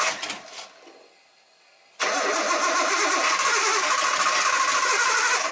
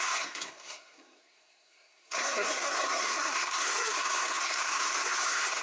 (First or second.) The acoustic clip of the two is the first